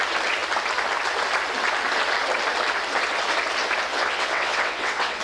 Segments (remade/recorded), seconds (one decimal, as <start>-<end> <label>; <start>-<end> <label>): 0.0-3.9 recorded; 3.9-5.2 remade

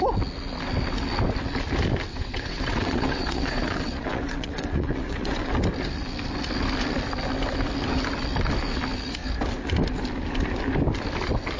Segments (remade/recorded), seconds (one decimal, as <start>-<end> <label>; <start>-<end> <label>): 0.0-2.1 recorded; 2.1-5.5 remade; 5.5-11.6 recorded

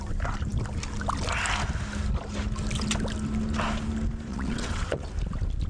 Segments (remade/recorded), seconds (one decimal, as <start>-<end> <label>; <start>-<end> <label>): 0.0-4.3 recorded; 4.3-5.1 remade; 5.1-5.7 recorded

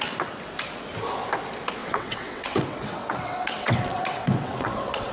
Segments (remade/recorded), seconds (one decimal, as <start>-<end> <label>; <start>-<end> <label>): 0.0-1.8 recorded; 1.8-5.1 remade

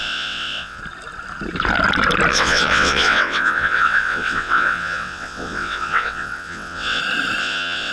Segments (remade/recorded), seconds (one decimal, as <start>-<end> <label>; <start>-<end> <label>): 0.0-0.8 remade; 0.8-2.3 recorded; 2.3-7.0 remade; 7.0-7.4 recorded; 7.4-7.9 remade